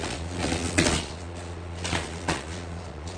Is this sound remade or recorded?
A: remade